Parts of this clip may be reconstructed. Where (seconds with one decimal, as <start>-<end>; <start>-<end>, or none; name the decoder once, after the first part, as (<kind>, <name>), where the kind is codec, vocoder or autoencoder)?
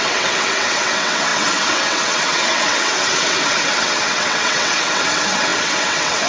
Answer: 0.0-6.3 (vocoder, WaveNeXt)